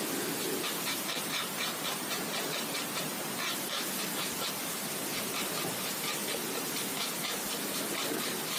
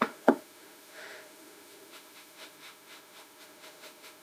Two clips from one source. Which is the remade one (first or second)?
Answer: second